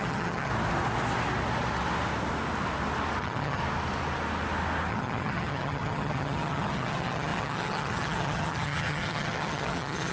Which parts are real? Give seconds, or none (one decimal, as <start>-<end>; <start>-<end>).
0.5-3.2; 3.6-4.9